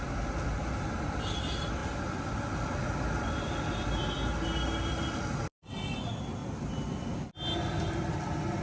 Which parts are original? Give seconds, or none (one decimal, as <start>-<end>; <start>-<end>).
0.0-8.6